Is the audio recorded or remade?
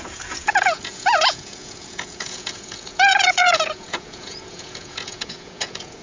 remade